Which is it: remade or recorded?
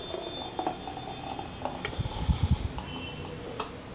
recorded